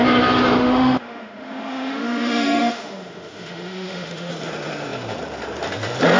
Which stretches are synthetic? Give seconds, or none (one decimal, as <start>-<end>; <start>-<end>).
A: 0.6-4.3